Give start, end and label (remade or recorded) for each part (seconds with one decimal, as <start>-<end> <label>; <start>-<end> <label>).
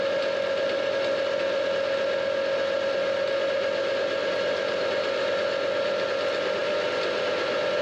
0.0-7.8 recorded